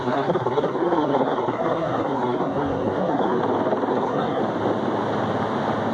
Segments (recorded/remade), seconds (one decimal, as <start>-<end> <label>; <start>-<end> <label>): 0.0-3.4 remade; 3.4-3.9 recorded; 3.9-4.4 remade; 4.4-5.9 recorded